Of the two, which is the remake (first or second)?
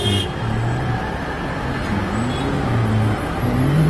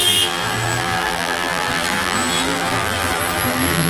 second